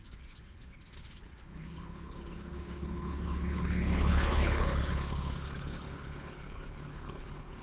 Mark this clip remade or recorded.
remade